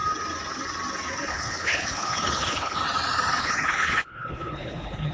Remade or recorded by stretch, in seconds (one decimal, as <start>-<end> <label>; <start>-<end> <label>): 0.0-1.3 recorded; 1.3-2.8 remade; 2.8-3.4 recorded; 3.4-5.1 remade